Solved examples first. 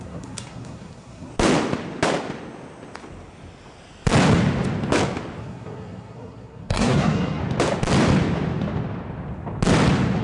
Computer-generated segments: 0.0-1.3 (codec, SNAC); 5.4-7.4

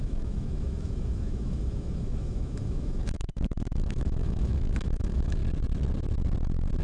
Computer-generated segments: 0.0-5.4 (autoencoder, DAC-VAE)

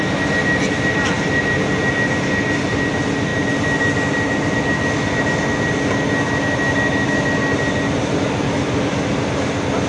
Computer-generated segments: none

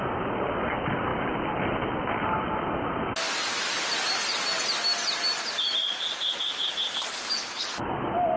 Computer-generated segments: 5.8-6.4 (vocoder, Vocos)